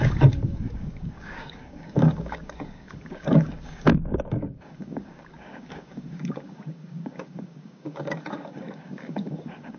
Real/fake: fake